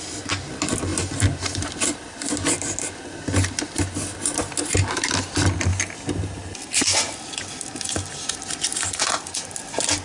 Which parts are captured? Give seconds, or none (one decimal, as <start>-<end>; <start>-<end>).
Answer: 0.0-10.0